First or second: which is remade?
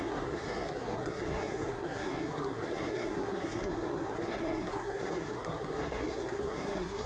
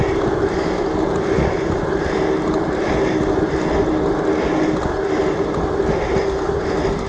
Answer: first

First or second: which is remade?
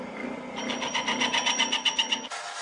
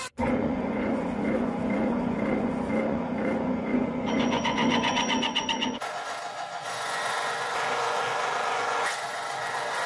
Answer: second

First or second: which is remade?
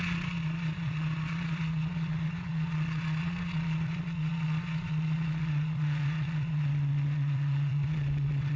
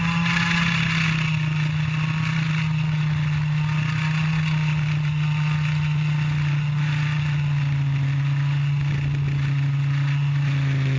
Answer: first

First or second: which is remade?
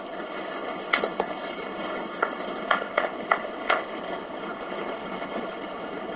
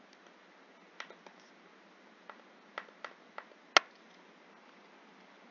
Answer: first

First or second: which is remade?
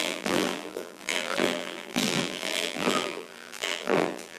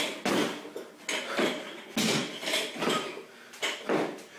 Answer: first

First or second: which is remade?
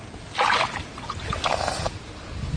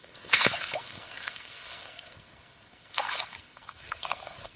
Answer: second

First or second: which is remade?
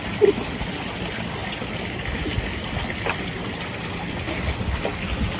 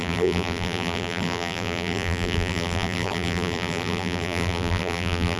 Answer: second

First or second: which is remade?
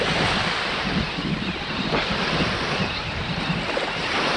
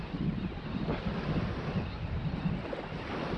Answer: first